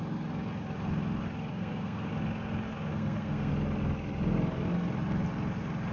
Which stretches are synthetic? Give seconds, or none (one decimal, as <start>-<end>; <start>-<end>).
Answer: 1.5-2.1; 2.9-3.5